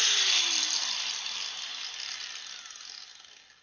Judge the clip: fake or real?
real